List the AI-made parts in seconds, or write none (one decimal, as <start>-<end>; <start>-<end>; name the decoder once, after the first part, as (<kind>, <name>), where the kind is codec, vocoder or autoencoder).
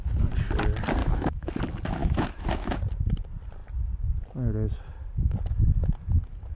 1.0-1.6 (autoencoder, DAC-VAE); 2.0-2.8